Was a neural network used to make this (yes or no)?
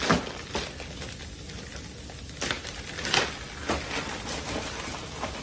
no